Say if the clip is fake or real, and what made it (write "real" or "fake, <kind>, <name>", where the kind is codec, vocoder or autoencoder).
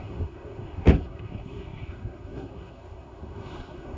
fake, codec, SNAC